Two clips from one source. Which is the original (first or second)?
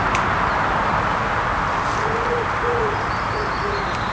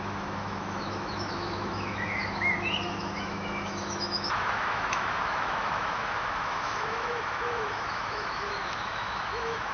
first